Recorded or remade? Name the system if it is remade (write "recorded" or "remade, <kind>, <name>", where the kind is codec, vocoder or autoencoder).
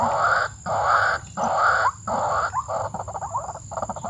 recorded